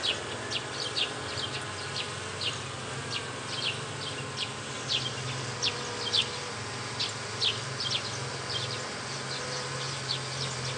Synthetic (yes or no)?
no